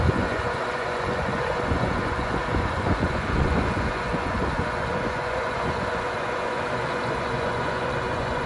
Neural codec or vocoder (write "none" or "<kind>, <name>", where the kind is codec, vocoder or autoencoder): vocoder, Vocos